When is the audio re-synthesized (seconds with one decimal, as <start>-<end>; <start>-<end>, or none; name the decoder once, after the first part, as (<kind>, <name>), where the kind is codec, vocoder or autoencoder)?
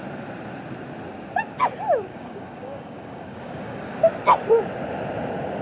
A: 2.1-4.0 (codec, DAC)